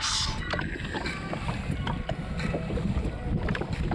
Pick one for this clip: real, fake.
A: real